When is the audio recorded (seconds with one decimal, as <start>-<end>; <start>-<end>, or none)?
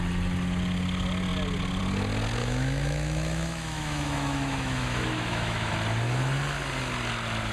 0.0-2.4; 5.7-7.5